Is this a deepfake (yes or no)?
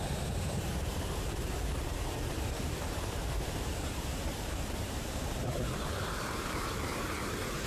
yes